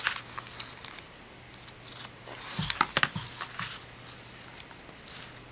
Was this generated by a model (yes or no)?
no